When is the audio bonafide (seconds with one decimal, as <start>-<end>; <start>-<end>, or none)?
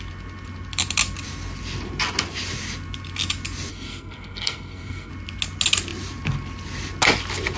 0.0-3.7; 5.1-7.6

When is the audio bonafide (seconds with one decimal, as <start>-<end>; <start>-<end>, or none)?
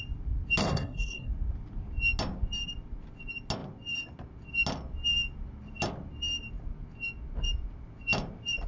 0.0-0.6; 1.3-8.7